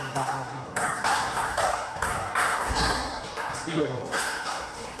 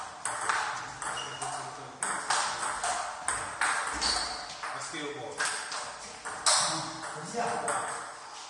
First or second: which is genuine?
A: second